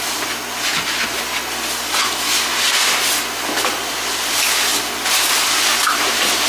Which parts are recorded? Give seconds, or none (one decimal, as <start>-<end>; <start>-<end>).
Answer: 0.0-6.5